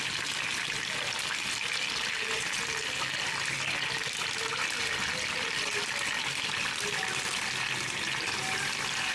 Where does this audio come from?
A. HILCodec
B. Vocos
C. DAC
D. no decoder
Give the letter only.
D